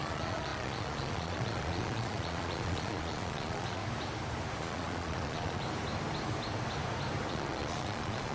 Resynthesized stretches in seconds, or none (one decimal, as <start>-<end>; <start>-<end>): 0.0-3.8; 4.6-5.6; 7.3-8.3